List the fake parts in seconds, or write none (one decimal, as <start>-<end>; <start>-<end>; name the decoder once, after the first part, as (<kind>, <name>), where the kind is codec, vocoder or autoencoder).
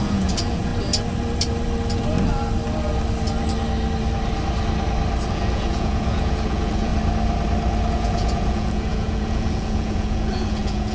0.0-0.7 (vocoder, Vocos); 5.3-6.9; 7.9-10.9